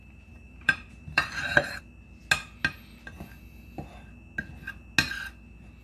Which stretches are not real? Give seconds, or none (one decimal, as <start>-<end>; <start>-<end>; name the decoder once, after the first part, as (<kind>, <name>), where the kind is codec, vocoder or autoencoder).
0.0-1.8 (vocoder, BigVGAN v2)